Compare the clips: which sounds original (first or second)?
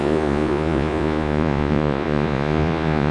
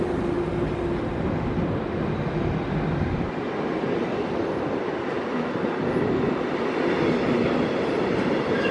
second